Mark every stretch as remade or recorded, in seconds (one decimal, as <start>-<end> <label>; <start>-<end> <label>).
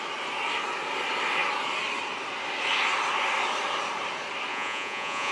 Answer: 0.0-4.5 recorded; 4.5-5.3 remade